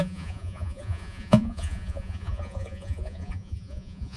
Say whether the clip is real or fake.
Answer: fake